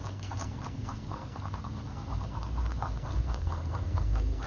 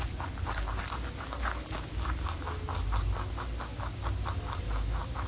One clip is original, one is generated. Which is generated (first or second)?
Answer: first